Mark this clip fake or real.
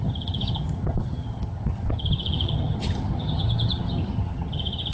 fake